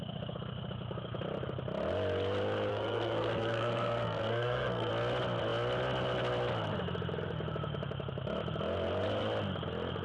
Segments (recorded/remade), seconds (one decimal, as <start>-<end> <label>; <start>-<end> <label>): 0.0-2.7 recorded; 2.7-4.9 remade; 4.9-10.0 recorded